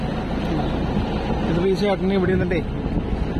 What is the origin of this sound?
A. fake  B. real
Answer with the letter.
B